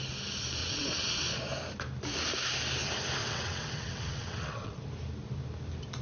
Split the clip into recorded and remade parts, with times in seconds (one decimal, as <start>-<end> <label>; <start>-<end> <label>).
0.0-0.6 recorded; 0.6-1.2 remade; 1.2-3.2 recorded; 3.2-4.8 remade; 4.8-6.0 recorded